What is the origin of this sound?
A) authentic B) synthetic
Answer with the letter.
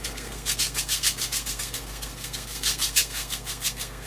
B